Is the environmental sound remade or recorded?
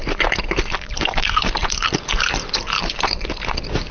remade